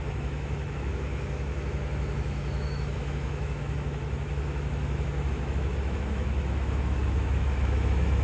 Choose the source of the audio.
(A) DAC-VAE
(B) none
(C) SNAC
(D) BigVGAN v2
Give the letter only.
A